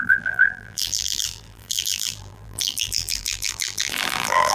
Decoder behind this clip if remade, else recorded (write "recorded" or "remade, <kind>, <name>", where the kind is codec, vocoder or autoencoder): remade, vocoder, BigVGAN v2